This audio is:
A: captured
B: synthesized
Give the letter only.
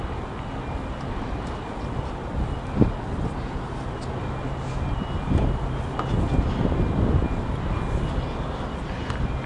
A